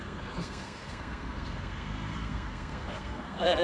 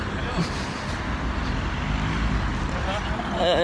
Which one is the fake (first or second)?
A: first